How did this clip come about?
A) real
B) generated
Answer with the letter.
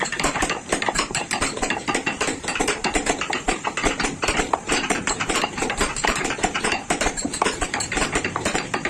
B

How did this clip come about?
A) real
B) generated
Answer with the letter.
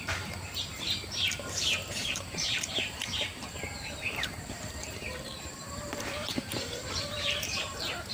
B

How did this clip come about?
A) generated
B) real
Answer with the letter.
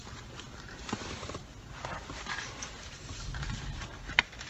A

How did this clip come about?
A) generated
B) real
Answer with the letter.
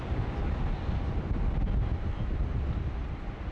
B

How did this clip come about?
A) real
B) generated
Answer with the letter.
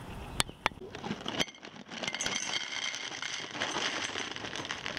A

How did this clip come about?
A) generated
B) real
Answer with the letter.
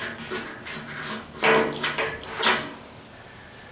B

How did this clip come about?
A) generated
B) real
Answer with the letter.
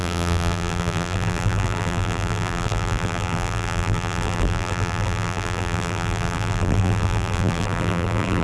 A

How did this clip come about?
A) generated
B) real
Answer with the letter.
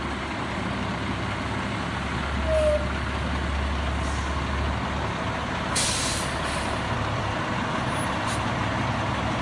B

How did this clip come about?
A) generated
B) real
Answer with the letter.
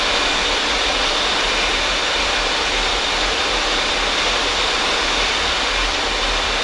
B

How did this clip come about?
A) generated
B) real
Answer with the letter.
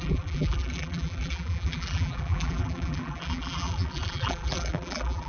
A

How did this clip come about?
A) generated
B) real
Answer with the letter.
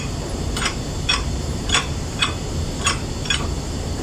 A